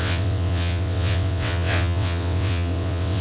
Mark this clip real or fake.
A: fake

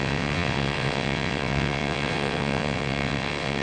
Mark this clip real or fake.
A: fake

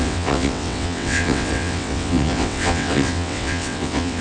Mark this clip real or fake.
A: fake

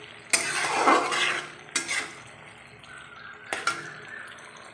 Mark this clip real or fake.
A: real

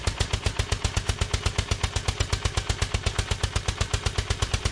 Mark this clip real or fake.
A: real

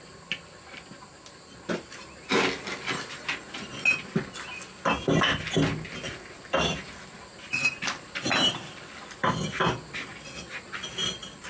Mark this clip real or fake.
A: real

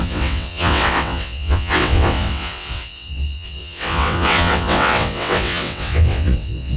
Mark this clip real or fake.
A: fake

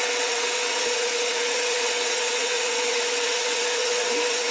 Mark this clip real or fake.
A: fake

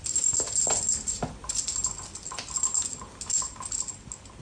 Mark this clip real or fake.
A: real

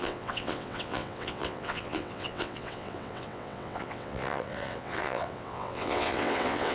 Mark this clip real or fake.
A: fake